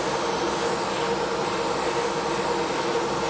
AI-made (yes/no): no